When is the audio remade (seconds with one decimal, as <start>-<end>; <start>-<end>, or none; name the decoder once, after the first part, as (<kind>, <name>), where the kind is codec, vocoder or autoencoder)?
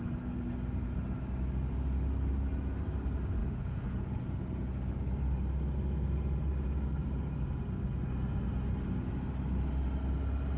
3.4-4.7 (vocoder, Vocos)